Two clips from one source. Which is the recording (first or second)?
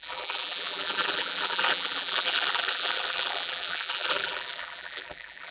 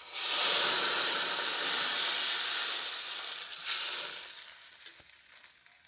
second